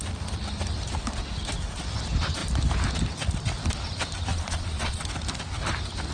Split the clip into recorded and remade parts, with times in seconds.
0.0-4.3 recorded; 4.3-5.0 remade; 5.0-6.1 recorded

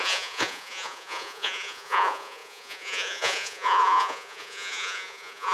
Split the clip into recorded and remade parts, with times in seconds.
0.0-5.5 remade

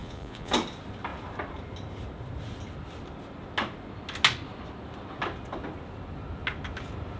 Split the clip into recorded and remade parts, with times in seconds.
0.0-0.5 remade; 0.5-7.2 recorded

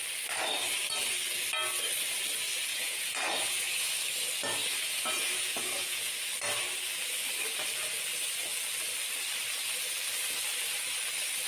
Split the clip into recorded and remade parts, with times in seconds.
0.0-2.7 recorded; 2.7-3.9 remade; 3.9-4.6 recorded; 4.6-6.3 remade; 6.3-11.5 recorded

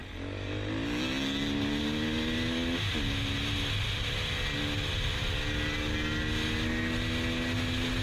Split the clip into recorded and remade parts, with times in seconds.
0.0-8.0 recorded

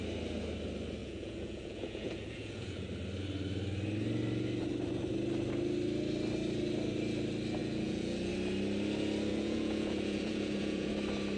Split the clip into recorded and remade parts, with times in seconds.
0.0-1.0 recorded; 1.0-2.9 remade; 2.9-7.6 recorded; 7.6-8.3 remade; 8.3-9.3 recorded; 9.3-10.9 remade; 10.9-11.4 recorded

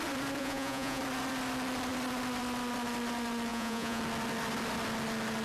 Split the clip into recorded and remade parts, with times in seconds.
0.0-0.4 recorded; 0.4-1.0 remade; 1.0-3.5 recorded; 3.5-4.0 remade; 4.0-5.4 recorded

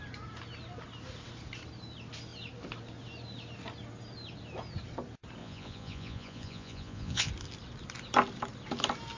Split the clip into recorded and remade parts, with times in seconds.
0.0-5.4 recorded; 5.4-7.3 remade; 7.3-9.2 recorded